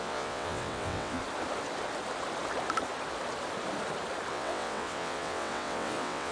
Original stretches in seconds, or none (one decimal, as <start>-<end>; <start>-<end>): 1.2-4.3